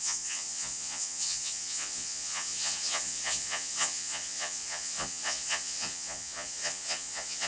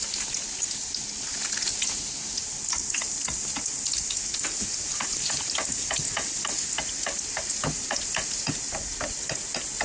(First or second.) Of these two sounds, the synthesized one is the first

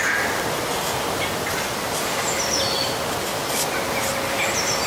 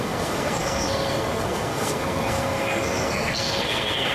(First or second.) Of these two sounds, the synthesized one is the second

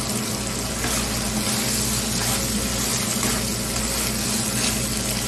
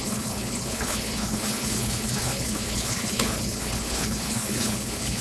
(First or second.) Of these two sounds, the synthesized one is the second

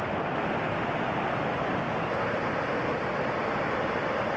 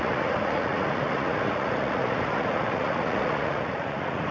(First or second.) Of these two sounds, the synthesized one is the second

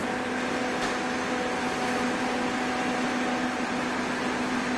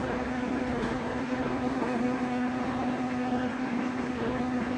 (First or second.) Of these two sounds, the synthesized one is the second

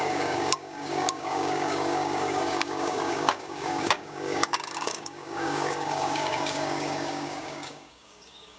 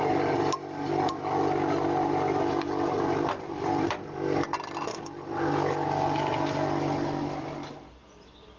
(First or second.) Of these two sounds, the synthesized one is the first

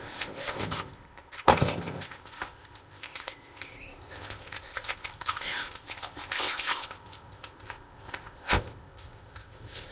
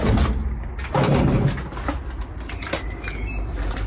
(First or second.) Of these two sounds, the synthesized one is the first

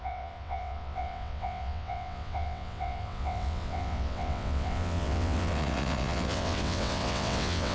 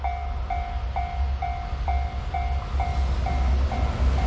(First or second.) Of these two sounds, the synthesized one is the first